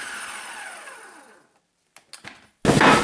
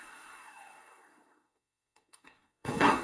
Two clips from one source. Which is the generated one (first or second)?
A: second